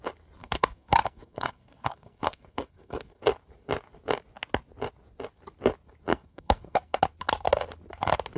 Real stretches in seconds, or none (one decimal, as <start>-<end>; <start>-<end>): 0.0-0.4; 3.2-6.1; 7.0-8.4